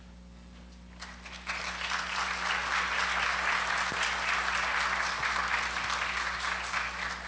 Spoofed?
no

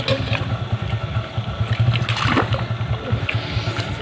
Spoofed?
no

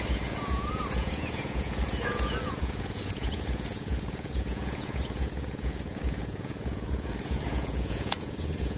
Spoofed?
yes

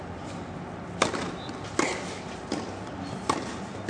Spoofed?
no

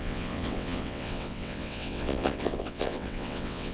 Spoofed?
yes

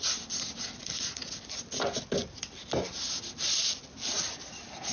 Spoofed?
no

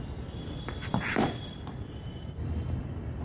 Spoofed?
no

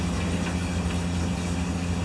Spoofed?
no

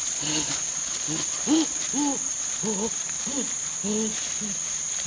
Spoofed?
no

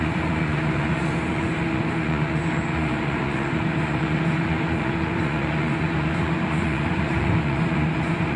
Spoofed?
yes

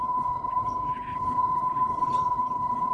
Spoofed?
yes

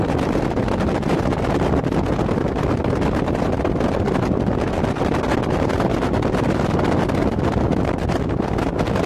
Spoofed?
no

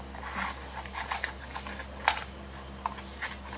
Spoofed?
no